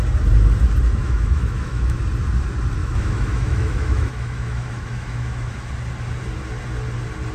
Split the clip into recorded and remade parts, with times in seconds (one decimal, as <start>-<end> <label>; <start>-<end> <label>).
0.0-1.0 recorded; 1.0-2.0 remade; 2.0-2.8 recorded; 2.8-5.7 remade; 5.7-7.3 recorded